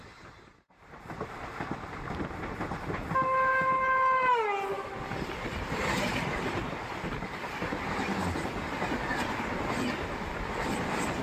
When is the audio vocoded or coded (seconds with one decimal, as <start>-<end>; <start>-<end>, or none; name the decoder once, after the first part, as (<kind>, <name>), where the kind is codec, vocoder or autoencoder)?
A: none